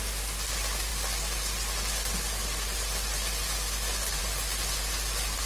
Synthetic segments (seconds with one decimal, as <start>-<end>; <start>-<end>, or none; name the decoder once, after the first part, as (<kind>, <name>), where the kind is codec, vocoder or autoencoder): none